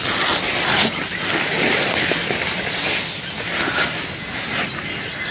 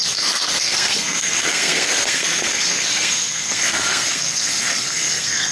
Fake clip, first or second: second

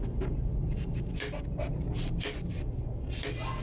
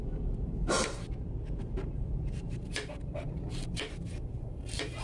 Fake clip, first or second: second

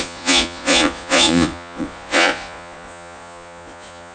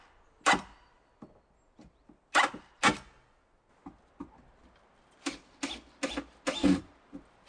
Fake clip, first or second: first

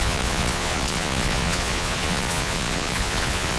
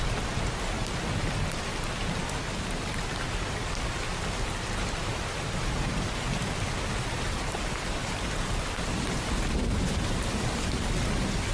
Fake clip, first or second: first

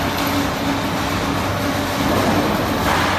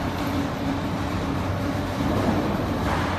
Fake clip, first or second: second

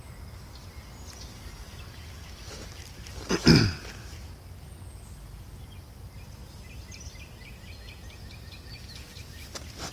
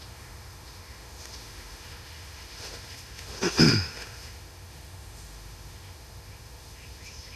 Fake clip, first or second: second